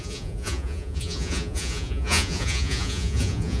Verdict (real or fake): fake